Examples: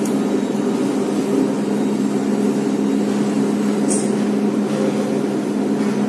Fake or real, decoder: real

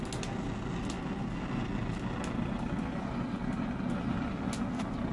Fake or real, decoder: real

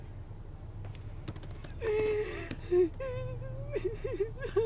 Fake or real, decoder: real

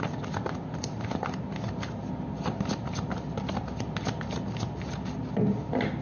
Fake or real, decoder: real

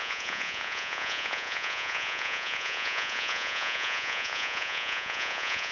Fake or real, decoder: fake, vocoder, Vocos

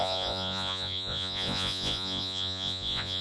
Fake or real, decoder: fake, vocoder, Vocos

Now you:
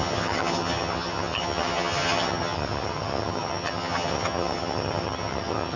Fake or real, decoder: fake, vocoder, HiFi-GAN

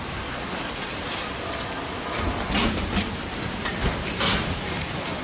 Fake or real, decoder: real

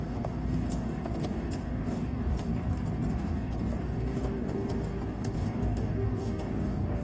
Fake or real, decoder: fake, codec, DAC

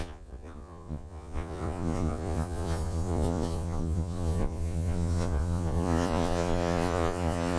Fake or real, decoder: fake, vocoder, Vocos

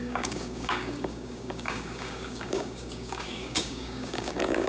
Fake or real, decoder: fake, codec, DAC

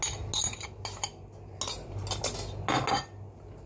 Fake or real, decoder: real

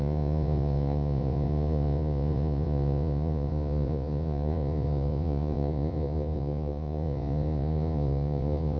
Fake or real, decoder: fake, vocoder, Vocos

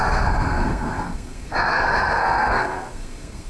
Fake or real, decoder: fake, codec, SNAC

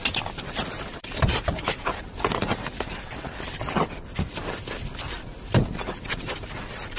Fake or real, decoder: real